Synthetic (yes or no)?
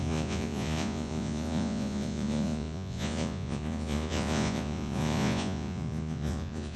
yes